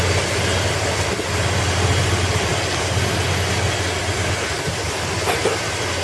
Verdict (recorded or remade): recorded